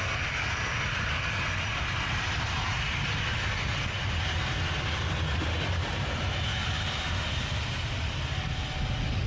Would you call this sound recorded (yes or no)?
yes